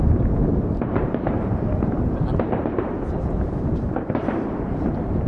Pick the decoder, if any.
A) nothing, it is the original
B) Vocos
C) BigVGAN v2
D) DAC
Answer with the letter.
C